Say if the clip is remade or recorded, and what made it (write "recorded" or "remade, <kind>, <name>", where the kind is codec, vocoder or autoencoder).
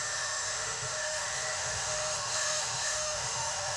remade, autoencoder, DAC-VAE